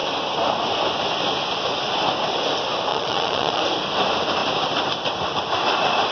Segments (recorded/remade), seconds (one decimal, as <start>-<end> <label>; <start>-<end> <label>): 0.0-2.9 recorded; 2.9-3.6 remade; 3.6-6.1 recorded